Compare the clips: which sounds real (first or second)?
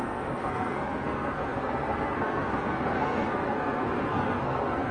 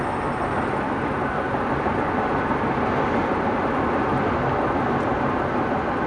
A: second